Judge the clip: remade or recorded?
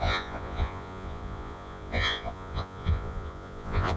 remade